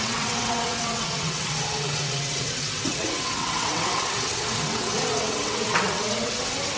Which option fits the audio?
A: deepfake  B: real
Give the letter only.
A